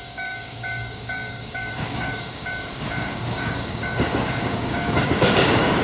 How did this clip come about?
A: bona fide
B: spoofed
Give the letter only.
B